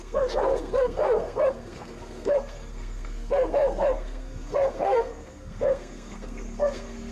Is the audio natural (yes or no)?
no